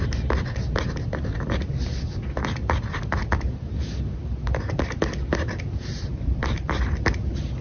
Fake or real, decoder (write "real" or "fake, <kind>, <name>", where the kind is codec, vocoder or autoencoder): real